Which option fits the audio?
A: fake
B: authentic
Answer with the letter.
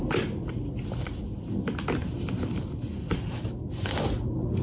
B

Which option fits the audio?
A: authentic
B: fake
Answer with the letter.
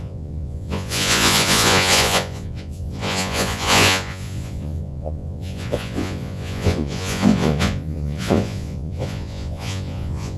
B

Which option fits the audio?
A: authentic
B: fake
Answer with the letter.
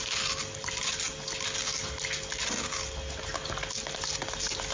A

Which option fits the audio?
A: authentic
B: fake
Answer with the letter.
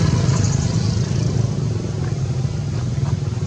A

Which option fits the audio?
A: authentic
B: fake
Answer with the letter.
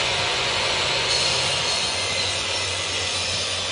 B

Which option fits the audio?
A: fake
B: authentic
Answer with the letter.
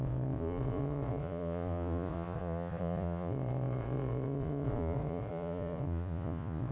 A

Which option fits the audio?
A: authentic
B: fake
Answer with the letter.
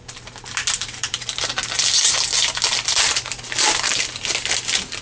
A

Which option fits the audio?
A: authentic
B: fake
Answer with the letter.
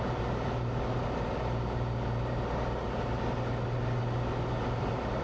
A